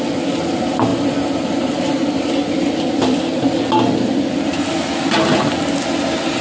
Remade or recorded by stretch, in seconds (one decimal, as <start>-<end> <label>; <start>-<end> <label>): 0.0-6.4 recorded